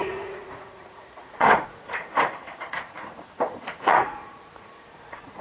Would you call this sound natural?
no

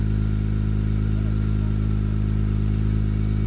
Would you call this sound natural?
yes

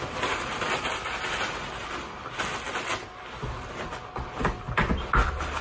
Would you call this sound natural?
yes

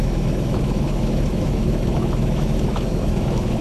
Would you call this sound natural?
no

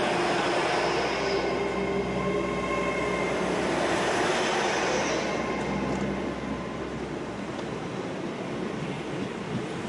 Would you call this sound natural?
yes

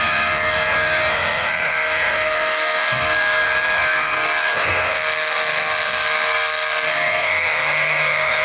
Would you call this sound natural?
no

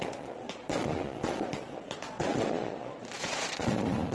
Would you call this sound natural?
no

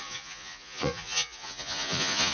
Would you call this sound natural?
no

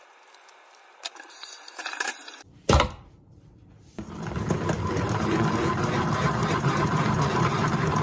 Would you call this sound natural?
no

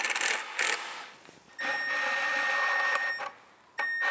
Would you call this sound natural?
yes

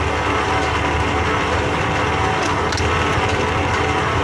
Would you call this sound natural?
yes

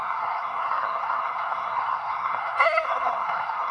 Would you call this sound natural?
no